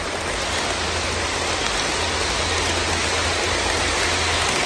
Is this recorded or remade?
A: recorded